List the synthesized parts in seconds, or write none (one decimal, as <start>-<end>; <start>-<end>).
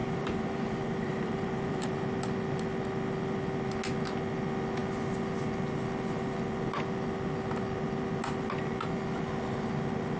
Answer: 0.0-1.9